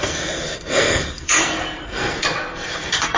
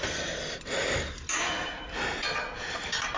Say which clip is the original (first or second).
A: second